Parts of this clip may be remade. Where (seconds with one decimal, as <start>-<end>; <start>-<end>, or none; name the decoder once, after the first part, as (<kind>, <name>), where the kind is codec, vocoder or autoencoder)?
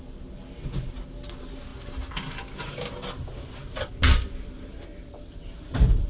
none